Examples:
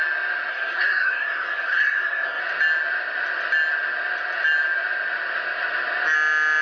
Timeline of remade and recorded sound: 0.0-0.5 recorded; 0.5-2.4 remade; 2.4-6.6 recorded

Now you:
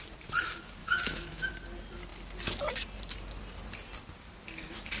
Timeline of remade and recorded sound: 0.0-0.8 recorded; 0.8-1.5 remade; 1.5-5.0 recorded